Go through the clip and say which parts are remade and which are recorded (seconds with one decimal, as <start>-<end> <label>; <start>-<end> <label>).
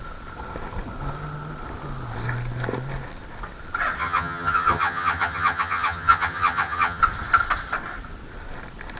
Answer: 0.0-4.0 recorded; 4.0-7.0 remade; 7.0-9.0 recorded